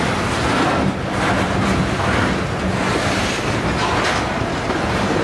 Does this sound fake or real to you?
real